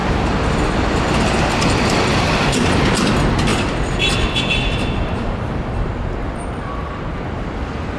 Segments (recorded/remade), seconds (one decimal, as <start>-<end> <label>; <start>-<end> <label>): 0.0-3.5 recorded; 3.5-8.0 remade